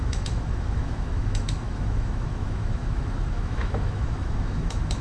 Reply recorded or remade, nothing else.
remade